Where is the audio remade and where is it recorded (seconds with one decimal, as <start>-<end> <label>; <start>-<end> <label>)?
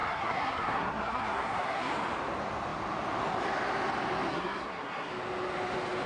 0.0-1.9 remade; 1.9-4.3 recorded; 4.3-5.1 remade; 5.1-6.1 recorded